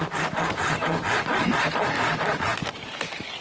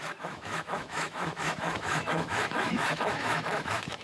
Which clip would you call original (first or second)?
first